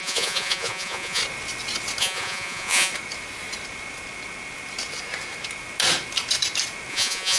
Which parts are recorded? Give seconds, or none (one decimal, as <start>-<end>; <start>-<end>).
1.2-2.0; 2.9-6.9